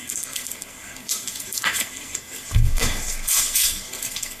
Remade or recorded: remade